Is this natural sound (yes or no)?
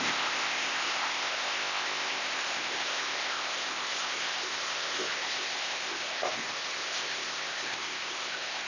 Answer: no